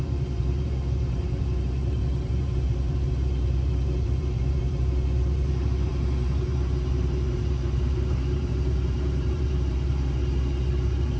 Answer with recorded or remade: remade